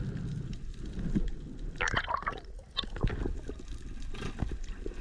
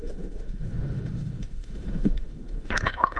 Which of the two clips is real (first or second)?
first